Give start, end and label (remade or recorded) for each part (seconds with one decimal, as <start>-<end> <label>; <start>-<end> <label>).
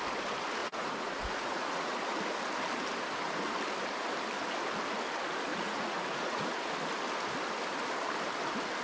0.0-0.6 recorded; 0.6-2.0 remade; 2.0-5.5 recorded; 5.5-6.7 remade; 6.7-8.8 recorded